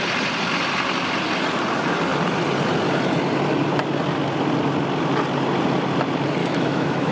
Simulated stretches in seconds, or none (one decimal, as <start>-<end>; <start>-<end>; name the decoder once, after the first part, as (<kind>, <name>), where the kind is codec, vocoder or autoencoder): 6.4-7.1 (autoencoder, DAC-VAE)